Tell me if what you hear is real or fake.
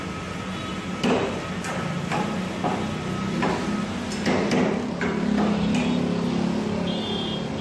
real